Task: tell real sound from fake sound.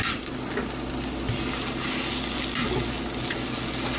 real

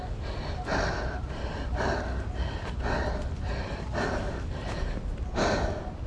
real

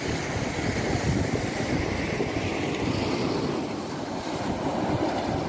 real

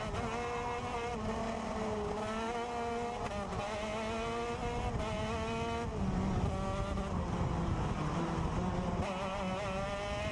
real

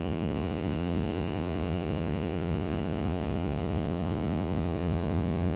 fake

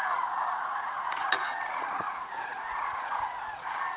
fake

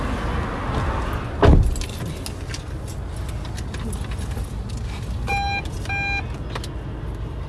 real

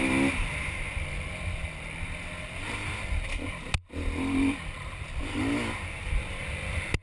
real